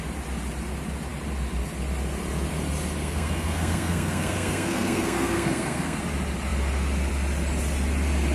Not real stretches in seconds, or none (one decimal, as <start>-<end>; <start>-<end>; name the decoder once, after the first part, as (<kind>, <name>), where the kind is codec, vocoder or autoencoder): 3.0-6.0 (codec, SNAC)